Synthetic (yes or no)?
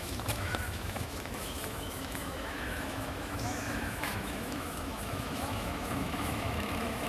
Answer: yes